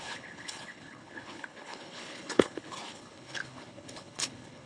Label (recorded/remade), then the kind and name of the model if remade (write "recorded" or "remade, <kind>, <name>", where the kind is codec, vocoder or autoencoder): remade, codec, HILCodec